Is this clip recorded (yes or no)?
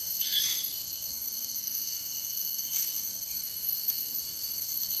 no